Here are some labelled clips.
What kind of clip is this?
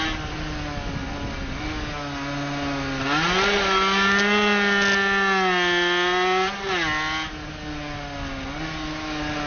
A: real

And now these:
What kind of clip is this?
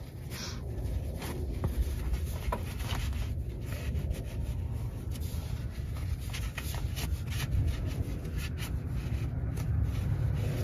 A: real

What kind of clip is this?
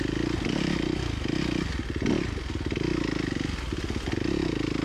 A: real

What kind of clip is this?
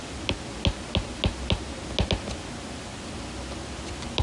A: real